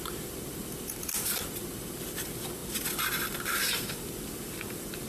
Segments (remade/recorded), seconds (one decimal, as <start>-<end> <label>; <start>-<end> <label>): 0.0-5.1 remade